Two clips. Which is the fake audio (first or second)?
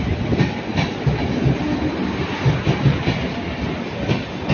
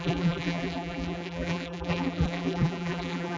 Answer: second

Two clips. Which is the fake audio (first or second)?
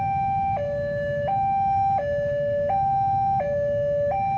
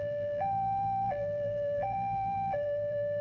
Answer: second